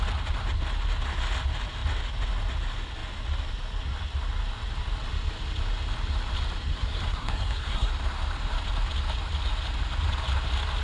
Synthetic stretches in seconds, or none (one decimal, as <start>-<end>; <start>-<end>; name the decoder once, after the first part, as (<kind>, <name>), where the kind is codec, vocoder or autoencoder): 6.7-7.9 (codec, SNAC)